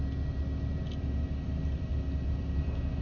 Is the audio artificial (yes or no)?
no